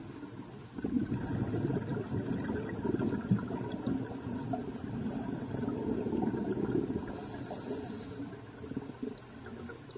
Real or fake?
real